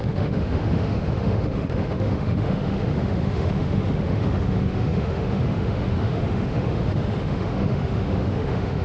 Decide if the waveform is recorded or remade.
remade